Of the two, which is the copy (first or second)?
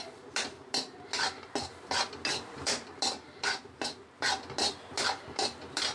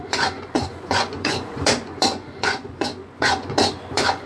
second